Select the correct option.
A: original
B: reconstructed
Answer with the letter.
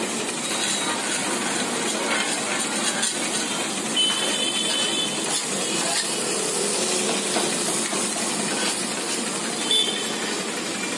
A